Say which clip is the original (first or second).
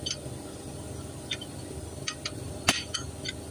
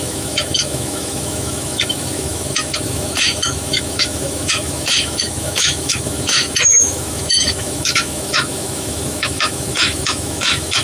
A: first